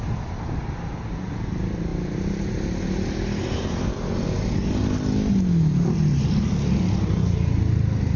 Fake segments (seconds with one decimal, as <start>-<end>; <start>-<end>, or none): none